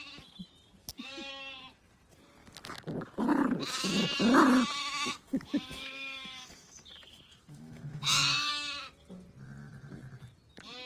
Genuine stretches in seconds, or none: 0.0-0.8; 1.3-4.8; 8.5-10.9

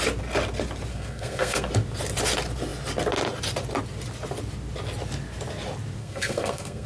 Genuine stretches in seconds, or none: 0.0-0.9; 1.7-6.0

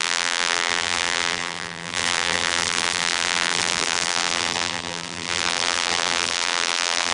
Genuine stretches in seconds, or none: none